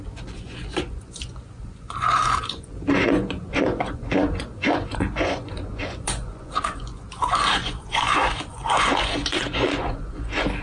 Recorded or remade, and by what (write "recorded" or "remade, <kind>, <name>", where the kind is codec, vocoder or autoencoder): remade, vocoder, Vocos